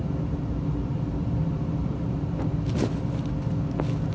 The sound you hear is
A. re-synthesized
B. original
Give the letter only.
B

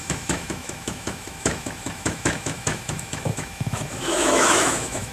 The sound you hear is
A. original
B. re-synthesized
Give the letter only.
B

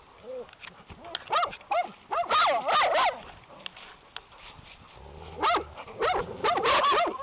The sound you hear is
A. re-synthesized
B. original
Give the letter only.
B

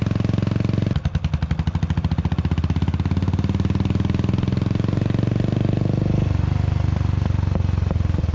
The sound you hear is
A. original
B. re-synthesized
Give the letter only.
A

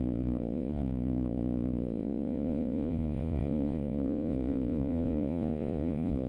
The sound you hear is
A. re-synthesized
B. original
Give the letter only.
A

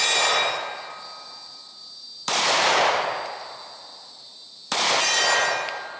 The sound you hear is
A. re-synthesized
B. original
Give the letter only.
B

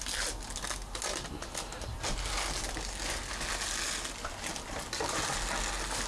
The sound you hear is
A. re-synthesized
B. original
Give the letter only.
B